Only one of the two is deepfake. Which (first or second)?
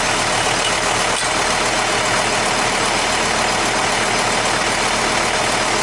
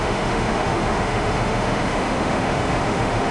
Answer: second